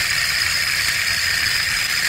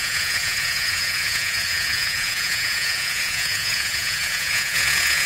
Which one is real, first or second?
first